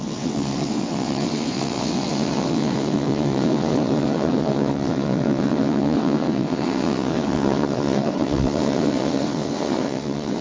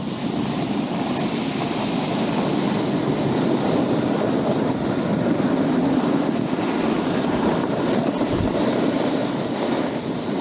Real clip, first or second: second